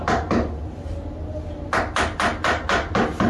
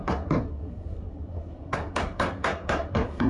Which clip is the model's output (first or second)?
second